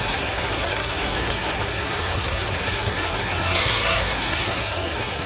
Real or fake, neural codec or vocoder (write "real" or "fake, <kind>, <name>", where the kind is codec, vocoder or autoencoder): fake, codec, SNAC